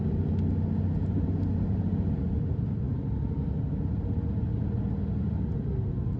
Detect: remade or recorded recorded